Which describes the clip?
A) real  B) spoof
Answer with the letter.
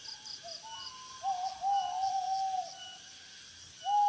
A